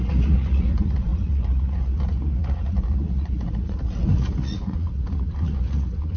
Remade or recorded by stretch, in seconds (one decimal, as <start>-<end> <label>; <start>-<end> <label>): 0.0-6.2 remade

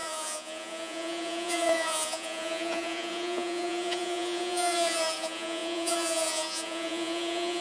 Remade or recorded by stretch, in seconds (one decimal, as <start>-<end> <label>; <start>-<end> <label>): 0.0-7.6 remade

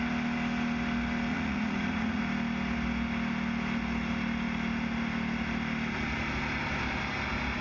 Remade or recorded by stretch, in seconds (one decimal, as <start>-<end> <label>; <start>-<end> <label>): 0.0-1.3 recorded; 1.3-2.2 remade; 2.2-7.6 recorded

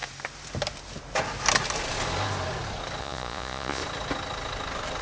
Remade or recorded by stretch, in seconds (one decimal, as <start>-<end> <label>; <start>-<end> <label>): 0.0-3.0 recorded; 3.0-3.8 remade; 3.8-5.0 recorded

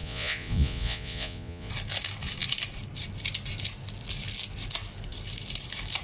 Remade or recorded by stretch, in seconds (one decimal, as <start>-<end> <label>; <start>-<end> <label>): 0.0-1.7 remade; 1.7-6.0 recorded